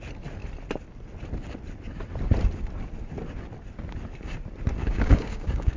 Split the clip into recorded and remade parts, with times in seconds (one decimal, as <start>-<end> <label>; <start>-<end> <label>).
0.0-4.8 recorded; 4.8-5.8 remade